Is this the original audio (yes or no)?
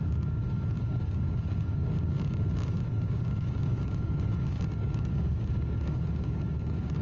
no